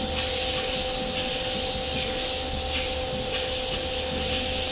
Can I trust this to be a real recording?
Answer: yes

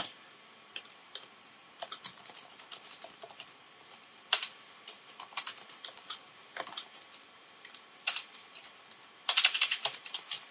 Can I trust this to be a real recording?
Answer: no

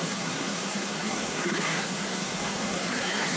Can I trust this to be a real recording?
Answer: no